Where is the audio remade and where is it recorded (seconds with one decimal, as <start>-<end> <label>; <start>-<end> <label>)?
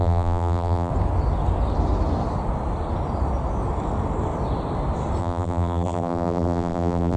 0.0-0.9 remade; 0.9-5.2 recorded; 5.2-7.2 remade